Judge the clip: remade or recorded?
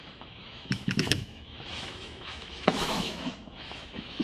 remade